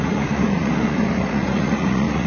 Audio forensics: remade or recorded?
remade